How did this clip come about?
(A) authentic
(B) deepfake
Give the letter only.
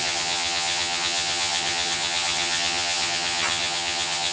B